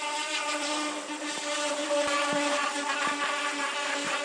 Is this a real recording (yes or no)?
yes